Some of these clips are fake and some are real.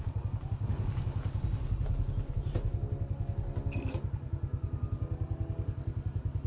real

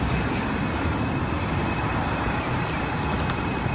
real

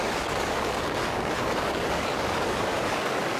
fake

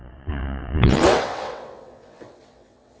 fake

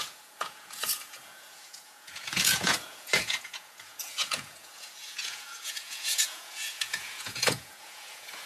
fake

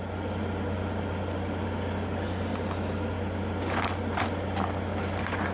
real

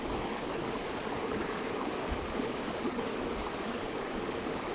fake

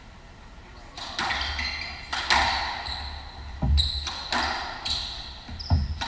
real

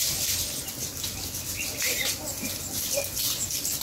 real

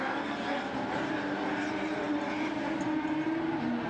fake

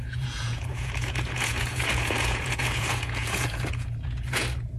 fake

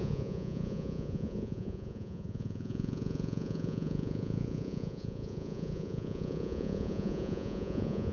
fake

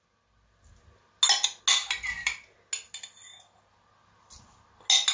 real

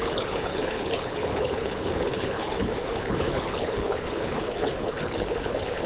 fake